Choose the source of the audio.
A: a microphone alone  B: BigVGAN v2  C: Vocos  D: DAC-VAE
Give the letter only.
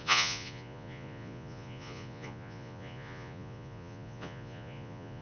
C